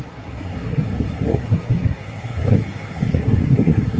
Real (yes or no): no